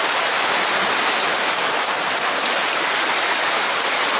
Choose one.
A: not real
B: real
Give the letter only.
B